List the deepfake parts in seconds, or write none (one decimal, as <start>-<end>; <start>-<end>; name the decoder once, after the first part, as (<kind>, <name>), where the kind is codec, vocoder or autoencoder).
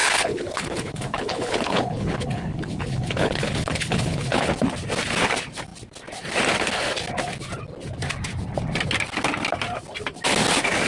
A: 0.0-4.5 (codec, HILCodec)